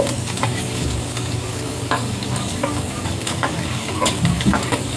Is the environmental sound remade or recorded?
remade